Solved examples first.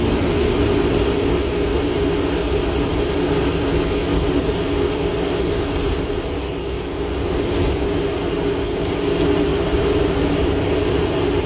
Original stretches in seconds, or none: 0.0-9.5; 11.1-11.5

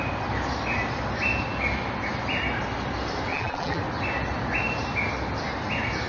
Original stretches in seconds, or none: 0.0-3.3; 3.8-6.1